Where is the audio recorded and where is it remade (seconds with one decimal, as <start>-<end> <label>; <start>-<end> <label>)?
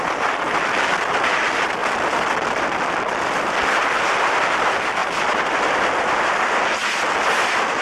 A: 0.0-1.8 recorded; 1.8-3.5 remade; 3.5-5.0 recorded; 5.0-6.2 remade; 6.2-7.8 recorded